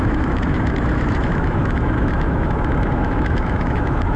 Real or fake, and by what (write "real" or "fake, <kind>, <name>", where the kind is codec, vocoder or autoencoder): fake, autoencoder, DAC-VAE